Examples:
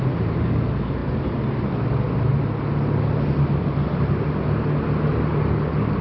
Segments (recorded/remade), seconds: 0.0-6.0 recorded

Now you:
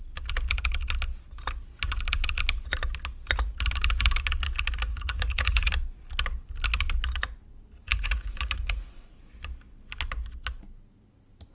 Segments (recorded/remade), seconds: 0.0-4.9 recorded; 4.9-5.7 remade; 5.7-7.9 recorded; 7.9-9.2 remade; 9.2-11.5 recorded

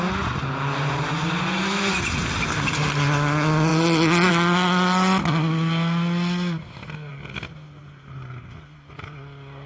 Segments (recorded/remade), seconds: 0.0-9.7 recorded

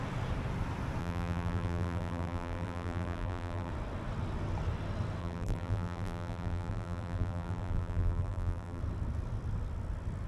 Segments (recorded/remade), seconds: 0.0-1.0 recorded; 1.0-3.7 remade; 3.7-5.2 recorded; 5.2-8.8 remade; 8.8-10.3 recorded

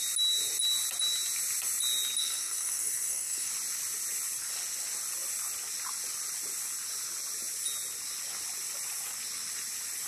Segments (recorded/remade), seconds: 0.0-2.2 recorded; 2.2-3.5 remade; 3.5-10.1 recorded